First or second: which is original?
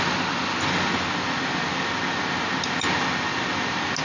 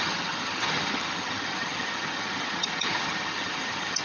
first